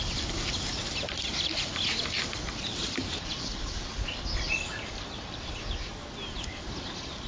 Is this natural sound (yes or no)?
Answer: yes